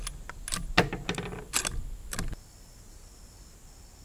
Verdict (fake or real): real